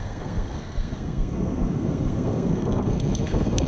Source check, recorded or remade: remade